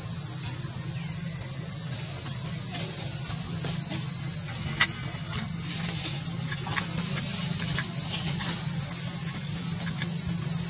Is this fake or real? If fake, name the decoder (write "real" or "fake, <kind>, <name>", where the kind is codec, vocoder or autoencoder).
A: real